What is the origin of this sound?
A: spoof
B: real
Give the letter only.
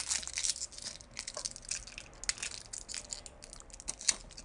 B